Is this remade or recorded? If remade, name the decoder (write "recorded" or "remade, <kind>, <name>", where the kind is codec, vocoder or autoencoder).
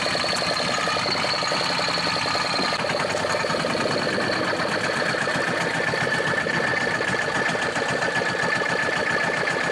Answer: recorded